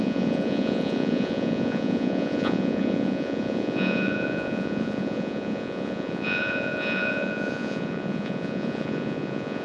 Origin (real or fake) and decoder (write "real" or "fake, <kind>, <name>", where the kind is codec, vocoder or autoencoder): fake, vocoder, Vocos